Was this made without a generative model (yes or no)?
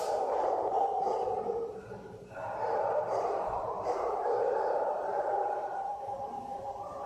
no